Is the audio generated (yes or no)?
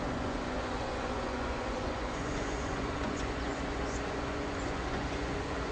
yes